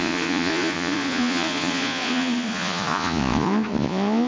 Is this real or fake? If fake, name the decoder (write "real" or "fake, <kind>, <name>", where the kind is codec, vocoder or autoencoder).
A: fake, vocoder, Vocos